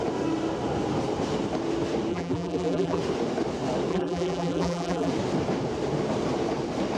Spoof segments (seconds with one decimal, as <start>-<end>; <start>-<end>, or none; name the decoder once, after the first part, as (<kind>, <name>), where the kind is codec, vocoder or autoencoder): 2.1-3.0 (vocoder, BigVGAN v2); 3.9-5.1